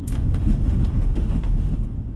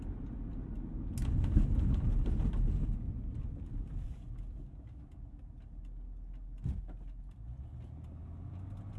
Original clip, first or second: second